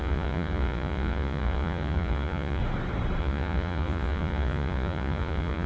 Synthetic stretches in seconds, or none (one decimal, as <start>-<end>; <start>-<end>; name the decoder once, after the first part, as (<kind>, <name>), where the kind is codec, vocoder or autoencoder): 0.0-2.6 (vocoder, Vocos); 3.2-5.7